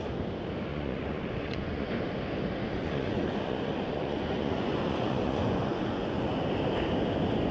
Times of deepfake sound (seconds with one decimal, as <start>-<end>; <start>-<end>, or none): 0.7-1.9; 2.7-6.4